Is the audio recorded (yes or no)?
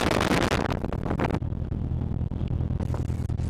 yes